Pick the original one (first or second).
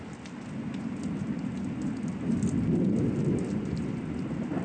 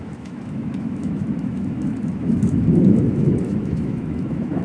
first